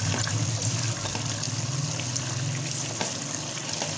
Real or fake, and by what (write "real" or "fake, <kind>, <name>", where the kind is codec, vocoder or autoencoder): real